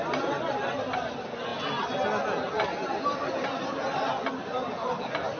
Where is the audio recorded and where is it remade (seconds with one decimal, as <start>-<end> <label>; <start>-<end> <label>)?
0.0-5.4 recorded